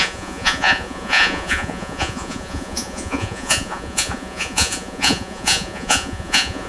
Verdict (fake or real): fake